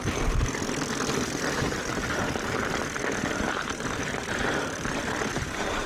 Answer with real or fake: fake